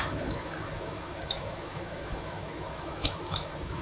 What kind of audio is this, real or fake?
fake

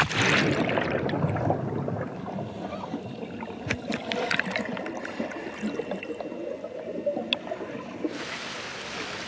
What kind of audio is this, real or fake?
real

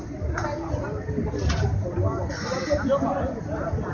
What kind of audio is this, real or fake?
real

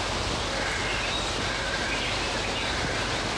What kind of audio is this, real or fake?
real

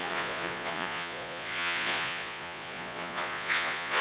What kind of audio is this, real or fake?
fake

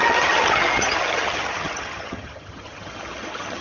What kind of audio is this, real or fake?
fake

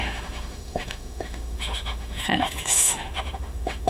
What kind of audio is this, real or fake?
fake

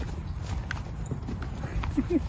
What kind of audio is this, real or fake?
real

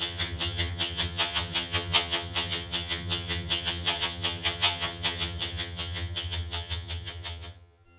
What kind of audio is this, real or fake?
fake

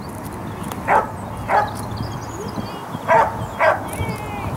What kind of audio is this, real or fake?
real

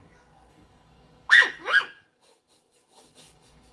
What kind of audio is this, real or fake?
fake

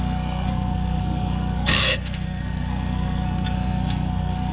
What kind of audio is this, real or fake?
fake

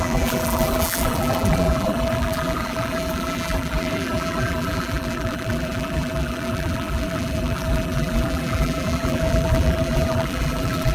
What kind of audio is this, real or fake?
fake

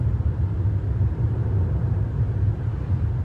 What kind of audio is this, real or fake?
real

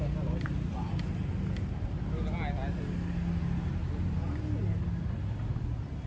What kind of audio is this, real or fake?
real